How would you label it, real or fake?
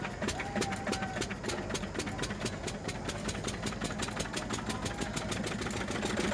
real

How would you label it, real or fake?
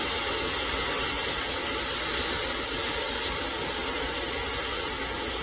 real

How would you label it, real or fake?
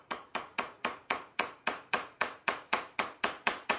fake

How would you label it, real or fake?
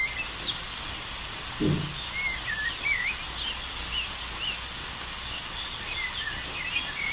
real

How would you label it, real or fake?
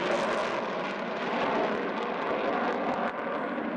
real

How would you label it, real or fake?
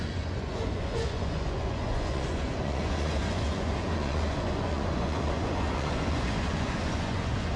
fake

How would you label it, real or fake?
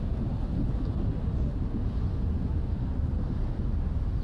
real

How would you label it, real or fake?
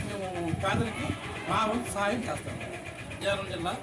fake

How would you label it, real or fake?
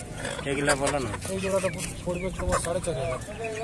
fake